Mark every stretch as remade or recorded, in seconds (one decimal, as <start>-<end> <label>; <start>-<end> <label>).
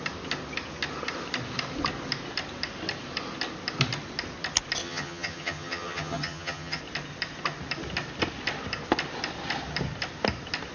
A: 0.0-4.8 recorded; 4.8-6.8 remade; 6.8-10.7 recorded